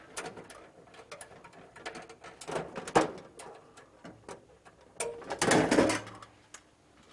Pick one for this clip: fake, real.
real